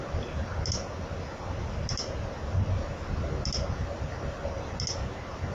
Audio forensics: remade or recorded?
recorded